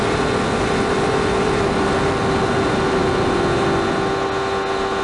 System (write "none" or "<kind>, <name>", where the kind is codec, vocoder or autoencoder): none